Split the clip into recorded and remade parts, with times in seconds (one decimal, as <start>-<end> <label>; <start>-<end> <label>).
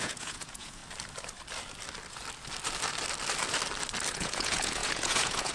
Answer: 0.0-0.8 remade; 0.8-4.1 recorded; 4.1-5.5 remade